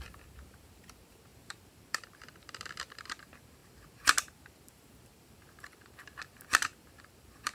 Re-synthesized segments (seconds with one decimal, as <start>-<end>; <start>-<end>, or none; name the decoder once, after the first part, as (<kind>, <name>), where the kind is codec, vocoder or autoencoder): 0.0-7.5 (vocoder, BigVGAN v2)